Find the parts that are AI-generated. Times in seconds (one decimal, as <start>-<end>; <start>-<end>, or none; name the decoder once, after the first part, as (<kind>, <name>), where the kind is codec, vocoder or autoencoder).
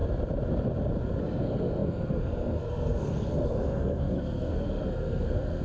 1.2-5.6 (codec, SNAC)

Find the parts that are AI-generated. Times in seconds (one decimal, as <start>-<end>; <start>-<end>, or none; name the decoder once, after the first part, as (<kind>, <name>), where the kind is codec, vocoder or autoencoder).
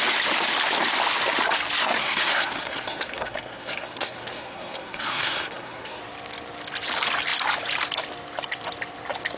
1.8-6.0 (codec, SNAC)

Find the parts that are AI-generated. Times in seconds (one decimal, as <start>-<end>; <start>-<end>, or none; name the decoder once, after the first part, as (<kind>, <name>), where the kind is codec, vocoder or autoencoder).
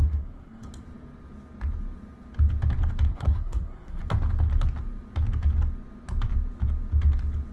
0.0-0.7 (codec, SNAC); 3.1-4.0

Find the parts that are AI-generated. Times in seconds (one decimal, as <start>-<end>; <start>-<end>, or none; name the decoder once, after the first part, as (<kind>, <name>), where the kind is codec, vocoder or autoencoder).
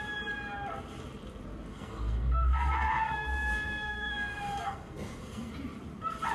1.7-5.5 (codec, SNAC)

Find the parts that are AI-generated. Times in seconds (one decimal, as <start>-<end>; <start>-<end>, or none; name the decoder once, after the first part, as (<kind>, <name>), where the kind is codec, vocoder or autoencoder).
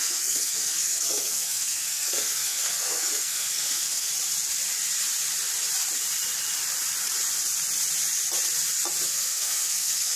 0.0-4.1 (codec, SNAC); 9.1-10.2